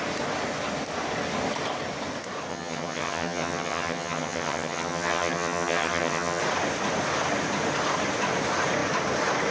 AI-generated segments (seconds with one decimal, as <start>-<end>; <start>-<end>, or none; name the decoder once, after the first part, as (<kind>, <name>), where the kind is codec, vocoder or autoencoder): 2.5-6.4 (vocoder, HiFi-GAN)